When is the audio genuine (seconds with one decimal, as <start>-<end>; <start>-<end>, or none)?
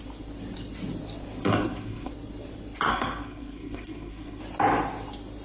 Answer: 0.0-1.4; 2.1-2.9; 4.4-5.4